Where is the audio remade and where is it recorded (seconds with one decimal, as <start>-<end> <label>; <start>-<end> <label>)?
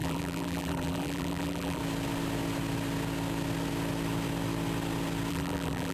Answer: 0.0-1.8 remade; 1.8-5.3 recorded; 5.3-5.9 remade